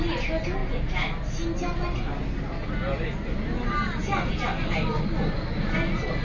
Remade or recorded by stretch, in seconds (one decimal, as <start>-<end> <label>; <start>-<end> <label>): 0.0-6.2 recorded